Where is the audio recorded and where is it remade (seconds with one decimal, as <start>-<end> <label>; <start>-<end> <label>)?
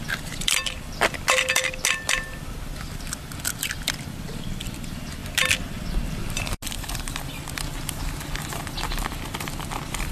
0.0-10.1 recorded